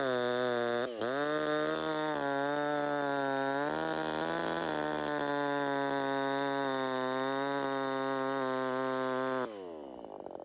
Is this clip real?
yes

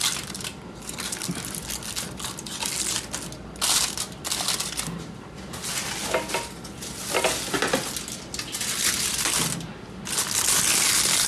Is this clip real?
yes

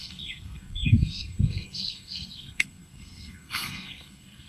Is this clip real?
no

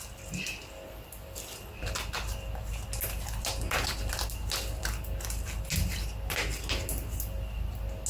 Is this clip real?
yes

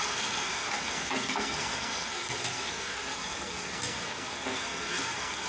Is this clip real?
no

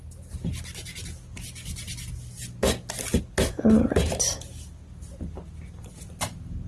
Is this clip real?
yes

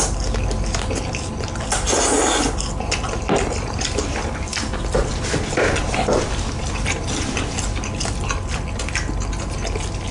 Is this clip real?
yes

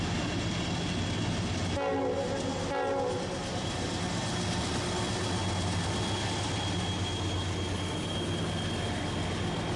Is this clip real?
yes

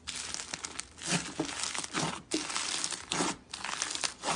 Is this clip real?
yes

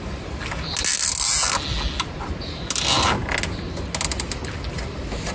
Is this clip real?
yes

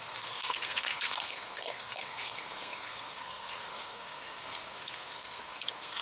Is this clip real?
no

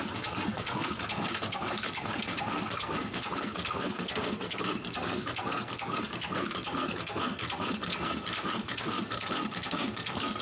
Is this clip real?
no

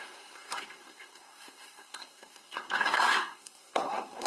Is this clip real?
no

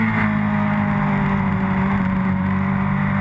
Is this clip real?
yes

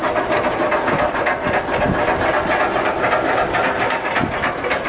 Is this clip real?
yes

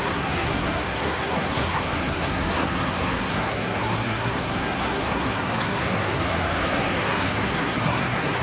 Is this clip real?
no